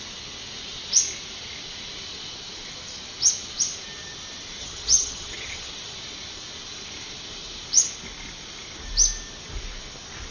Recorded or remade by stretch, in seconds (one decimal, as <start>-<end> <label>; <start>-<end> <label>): 0.0-4.6 recorded; 4.6-5.7 remade; 5.7-10.3 recorded